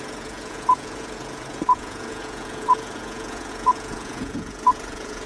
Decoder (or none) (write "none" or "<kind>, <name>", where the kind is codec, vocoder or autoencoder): vocoder, Vocos